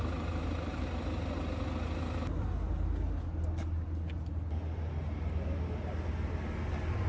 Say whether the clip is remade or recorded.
recorded